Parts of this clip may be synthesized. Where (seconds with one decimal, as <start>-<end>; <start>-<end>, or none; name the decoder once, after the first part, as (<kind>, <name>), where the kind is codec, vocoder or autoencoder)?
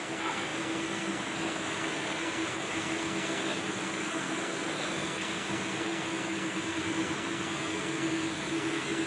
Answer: 0.0-9.1 (codec, SNAC)